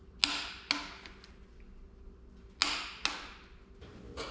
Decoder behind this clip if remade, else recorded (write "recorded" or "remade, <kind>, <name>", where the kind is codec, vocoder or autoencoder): recorded